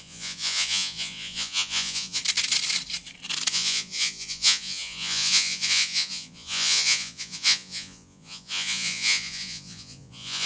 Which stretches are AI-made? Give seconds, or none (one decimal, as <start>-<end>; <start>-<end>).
0.0-2.2; 3.5-10.5